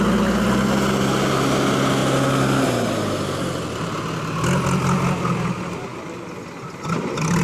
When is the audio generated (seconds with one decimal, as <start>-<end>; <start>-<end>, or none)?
none